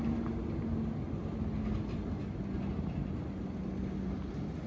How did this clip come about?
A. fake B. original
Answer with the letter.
B